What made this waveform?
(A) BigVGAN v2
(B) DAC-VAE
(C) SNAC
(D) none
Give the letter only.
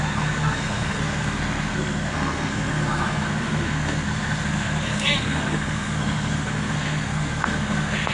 C